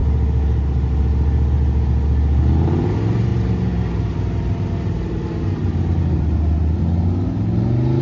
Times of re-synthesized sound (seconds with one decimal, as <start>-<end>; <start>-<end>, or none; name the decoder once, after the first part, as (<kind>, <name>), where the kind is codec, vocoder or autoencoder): 3.3-6.8 (vocoder, BigVGAN v2)